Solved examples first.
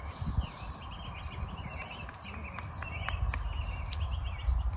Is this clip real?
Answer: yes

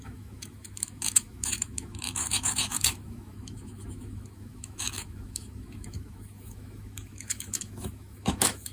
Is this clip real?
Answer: no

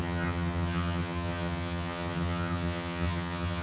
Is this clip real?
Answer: no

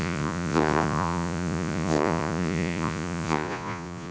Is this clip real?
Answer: no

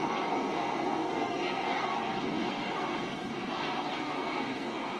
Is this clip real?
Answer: no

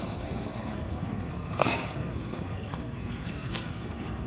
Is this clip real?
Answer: no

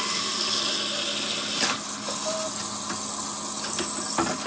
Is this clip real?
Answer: yes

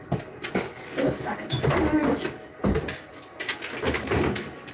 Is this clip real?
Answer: yes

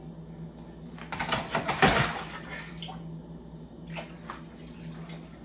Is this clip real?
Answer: yes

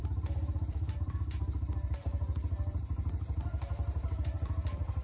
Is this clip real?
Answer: no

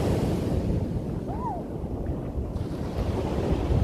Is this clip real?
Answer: yes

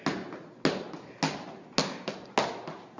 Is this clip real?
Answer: yes